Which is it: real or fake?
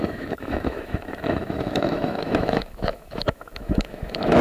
fake